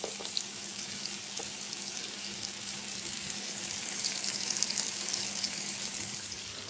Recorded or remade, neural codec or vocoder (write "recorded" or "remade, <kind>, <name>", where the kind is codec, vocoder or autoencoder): remade, codec, DAC